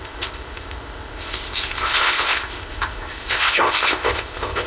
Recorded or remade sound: remade